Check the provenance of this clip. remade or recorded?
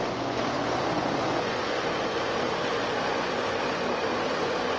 remade